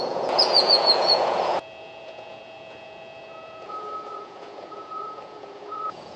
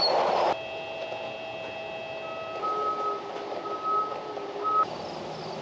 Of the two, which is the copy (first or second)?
first